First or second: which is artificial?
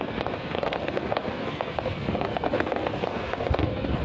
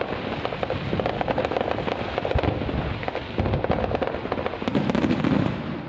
first